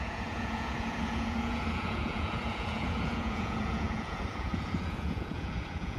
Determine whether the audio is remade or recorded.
remade